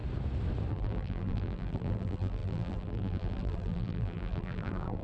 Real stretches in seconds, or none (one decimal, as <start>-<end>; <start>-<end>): 0.0-0.7